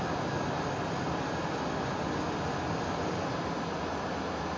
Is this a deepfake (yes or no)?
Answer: no